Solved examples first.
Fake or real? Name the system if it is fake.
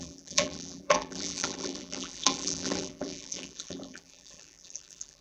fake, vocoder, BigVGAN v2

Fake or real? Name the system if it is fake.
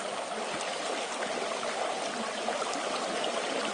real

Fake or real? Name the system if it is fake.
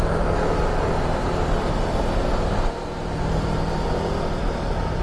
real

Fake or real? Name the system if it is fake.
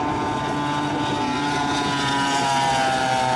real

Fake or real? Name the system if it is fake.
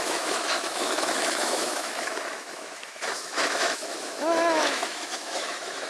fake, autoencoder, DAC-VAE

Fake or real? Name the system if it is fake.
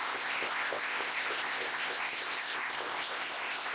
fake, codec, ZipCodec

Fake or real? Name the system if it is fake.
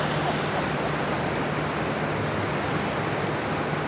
real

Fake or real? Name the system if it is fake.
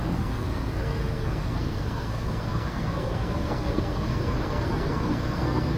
fake, codec, SNAC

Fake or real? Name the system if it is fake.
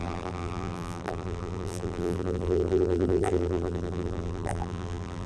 fake, vocoder, BigVGAN v2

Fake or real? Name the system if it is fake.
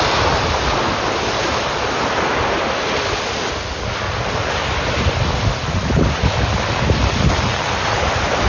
real